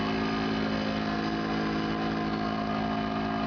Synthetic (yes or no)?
no